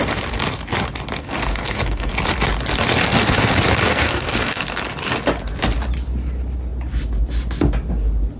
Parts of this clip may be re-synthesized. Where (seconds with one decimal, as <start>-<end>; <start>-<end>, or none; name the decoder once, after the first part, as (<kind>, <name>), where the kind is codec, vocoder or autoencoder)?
1.2-2.1 (codec, SNAC); 3.9-4.6